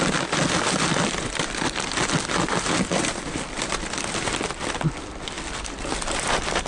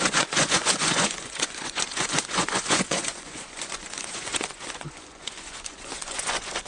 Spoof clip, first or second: second